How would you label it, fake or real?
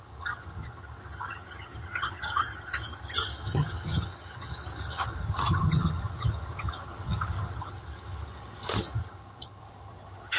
fake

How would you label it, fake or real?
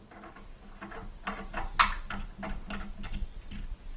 real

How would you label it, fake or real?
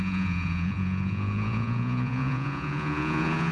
fake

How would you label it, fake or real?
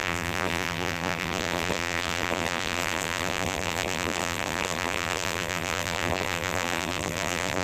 fake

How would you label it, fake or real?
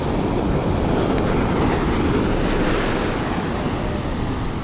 real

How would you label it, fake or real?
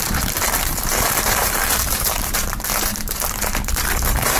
fake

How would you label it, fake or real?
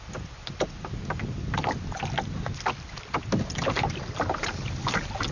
real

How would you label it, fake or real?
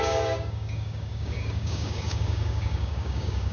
fake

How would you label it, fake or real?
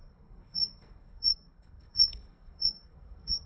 fake